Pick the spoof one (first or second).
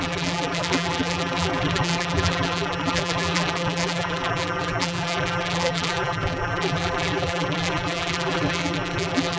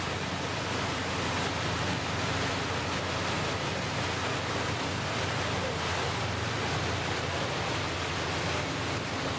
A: first